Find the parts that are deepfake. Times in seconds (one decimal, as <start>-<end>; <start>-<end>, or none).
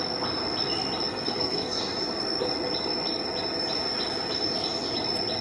1.1-1.8